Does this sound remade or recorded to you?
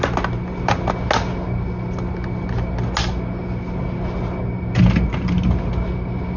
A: recorded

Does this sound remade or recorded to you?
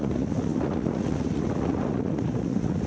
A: remade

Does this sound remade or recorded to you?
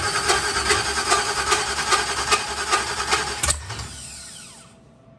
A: recorded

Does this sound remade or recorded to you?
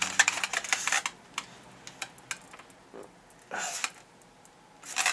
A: recorded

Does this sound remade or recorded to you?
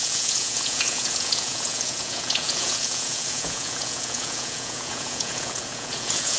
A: remade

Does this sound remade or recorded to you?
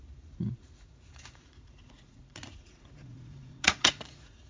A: remade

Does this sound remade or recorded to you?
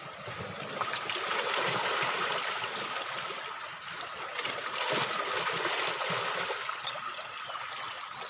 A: recorded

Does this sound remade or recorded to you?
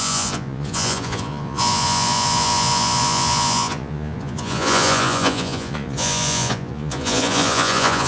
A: remade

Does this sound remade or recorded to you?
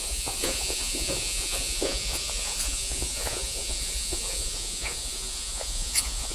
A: remade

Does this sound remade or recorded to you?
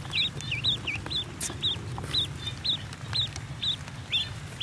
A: recorded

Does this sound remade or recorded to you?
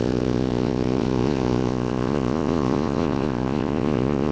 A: remade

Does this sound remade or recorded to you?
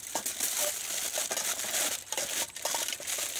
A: recorded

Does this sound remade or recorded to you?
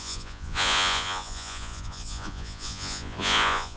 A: remade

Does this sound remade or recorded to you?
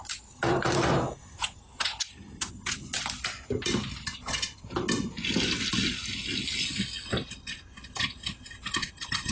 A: recorded